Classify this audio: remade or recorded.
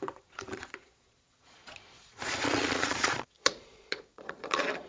remade